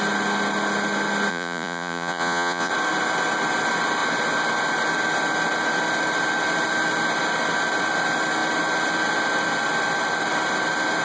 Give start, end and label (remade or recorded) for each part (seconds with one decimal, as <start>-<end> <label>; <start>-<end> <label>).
0.0-1.3 recorded; 1.3-2.7 remade; 2.7-11.0 recorded